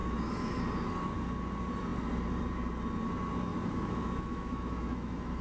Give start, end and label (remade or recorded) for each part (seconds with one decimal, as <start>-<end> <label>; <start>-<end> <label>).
0.0-0.6 remade; 0.6-3.5 recorded; 3.5-5.4 remade